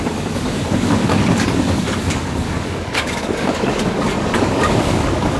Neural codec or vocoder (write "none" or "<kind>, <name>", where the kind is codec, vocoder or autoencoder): codec, DAC